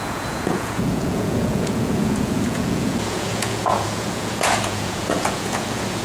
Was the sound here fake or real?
fake